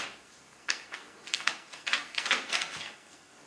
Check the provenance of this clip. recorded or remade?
remade